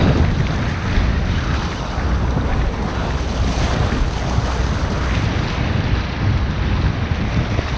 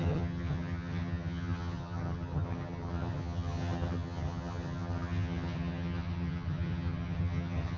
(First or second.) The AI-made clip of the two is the second